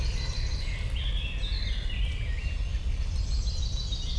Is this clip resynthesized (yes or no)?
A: no